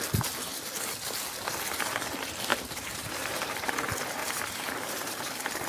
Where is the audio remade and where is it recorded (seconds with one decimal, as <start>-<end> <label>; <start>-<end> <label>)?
0.0-2.5 recorded; 2.5-3.8 remade; 3.8-4.2 recorded; 4.2-5.7 remade